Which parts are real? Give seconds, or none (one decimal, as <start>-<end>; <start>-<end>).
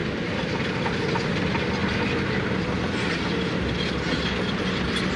0.6-5.2